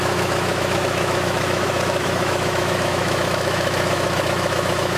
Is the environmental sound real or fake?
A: fake